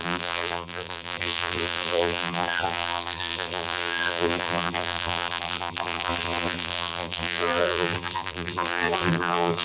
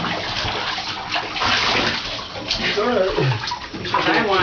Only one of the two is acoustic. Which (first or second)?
second